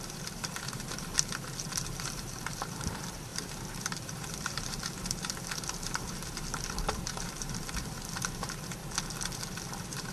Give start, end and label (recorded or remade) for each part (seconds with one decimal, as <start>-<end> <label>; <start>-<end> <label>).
0.0-1.1 remade; 1.1-1.7 recorded; 1.7-8.8 remade; 8.8-9.7 recorded; 9.7-10.1 remade